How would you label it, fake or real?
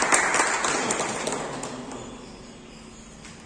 real